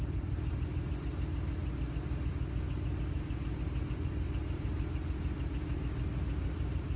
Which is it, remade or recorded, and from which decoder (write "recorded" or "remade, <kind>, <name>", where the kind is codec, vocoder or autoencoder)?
recorded